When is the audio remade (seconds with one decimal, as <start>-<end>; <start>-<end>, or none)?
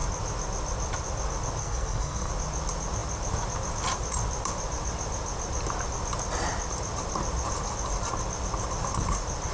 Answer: 1.6-2.3